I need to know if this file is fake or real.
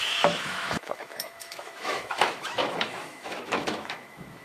fake